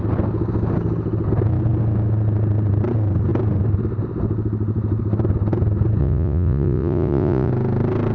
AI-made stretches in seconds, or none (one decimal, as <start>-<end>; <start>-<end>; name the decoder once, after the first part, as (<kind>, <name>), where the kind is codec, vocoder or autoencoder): 6.0-7.5 (vocoder, Vocos)